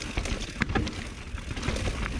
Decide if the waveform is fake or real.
real